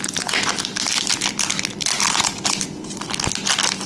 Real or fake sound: real